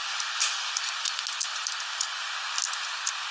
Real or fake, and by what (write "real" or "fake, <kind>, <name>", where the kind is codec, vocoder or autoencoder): real